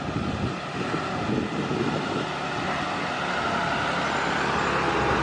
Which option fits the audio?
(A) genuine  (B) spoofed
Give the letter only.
A